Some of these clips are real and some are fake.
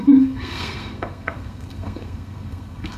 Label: fake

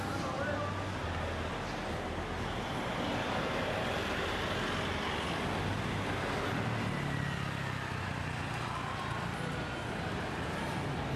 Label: real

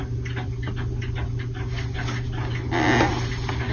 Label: real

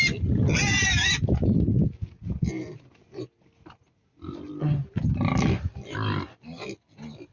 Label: real